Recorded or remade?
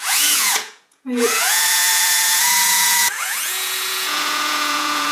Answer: remade